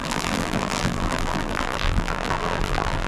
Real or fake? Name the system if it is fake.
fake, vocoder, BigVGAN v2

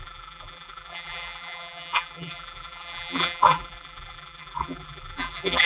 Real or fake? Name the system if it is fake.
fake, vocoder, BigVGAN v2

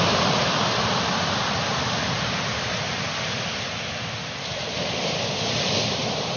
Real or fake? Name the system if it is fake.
real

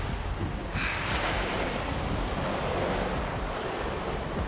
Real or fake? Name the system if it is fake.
real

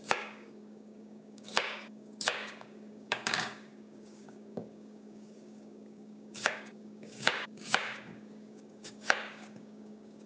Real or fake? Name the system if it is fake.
fake, codec, DAC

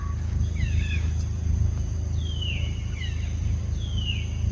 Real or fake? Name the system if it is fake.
real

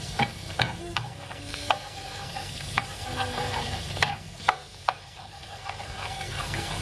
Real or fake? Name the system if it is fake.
fake, codec, SNAC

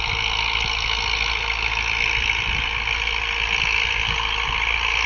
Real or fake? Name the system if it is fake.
real